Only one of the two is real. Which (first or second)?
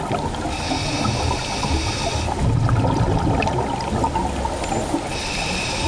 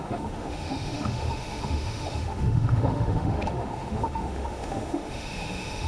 first